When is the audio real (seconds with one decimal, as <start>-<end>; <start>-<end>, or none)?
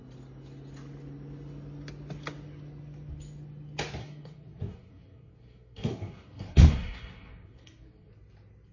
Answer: 0.0-4.0; 8.1-8.7